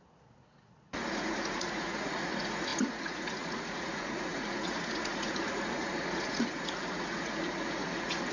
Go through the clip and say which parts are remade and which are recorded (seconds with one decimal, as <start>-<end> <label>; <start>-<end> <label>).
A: 0.0-8.3 remade